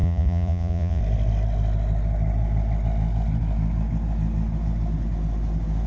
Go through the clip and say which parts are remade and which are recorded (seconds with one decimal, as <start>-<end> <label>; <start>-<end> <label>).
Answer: 0.0-1.0 remade; 1.0-5.9 recorded